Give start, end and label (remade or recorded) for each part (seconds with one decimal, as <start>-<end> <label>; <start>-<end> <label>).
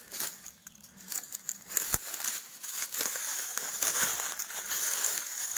0.0-4.1 remade; 4.1-4.6 recorded; 4.6-5.6 remade